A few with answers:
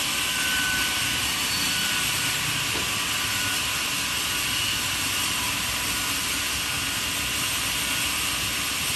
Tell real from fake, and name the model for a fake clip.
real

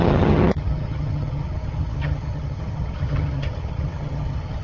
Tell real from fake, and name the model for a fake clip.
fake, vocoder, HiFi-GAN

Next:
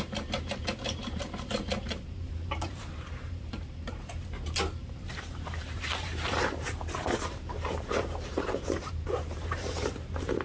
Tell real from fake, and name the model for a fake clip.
fake, vocoder, BigVGAN v2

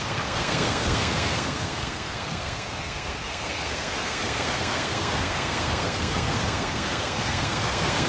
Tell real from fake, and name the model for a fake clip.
fake, codec, SNAC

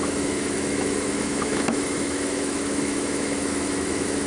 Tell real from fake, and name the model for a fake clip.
fake, autoencoder, DAC-VAE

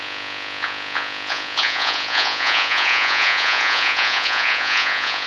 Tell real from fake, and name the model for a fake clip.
fake, vocoder, Vocos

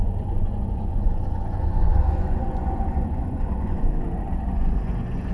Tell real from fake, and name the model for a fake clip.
fake, vocoder, Vocos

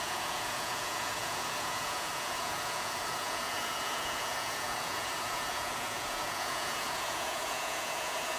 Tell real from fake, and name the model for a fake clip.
fake, vocoder, Vocos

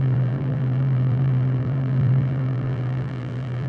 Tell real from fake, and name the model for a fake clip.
fake, vocoder, BigVGAN v2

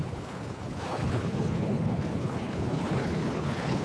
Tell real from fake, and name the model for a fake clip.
fake, codec, HILCodec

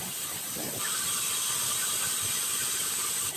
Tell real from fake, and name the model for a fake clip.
fake, vocoder, BigVGAN v2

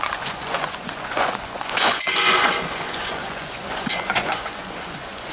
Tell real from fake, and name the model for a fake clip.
fake, vocoder, Vocos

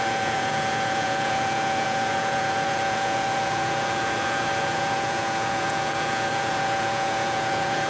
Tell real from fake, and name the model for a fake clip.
fake, vocoder, Vocos